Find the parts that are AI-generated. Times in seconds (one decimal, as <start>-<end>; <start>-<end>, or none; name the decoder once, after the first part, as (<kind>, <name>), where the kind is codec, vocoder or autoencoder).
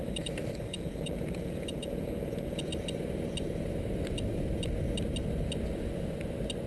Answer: 0.7-2.7 (vocoder, Vocos)